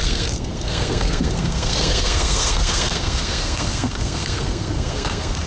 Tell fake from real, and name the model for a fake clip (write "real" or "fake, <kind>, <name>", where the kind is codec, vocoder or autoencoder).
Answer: fake, codec, SNAC